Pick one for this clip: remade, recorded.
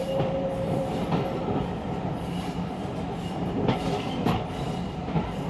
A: remade